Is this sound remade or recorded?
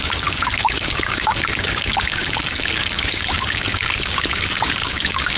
remade